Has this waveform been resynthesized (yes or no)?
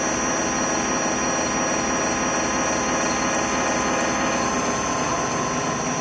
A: no